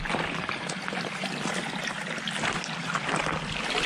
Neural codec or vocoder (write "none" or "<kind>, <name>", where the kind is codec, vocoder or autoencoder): none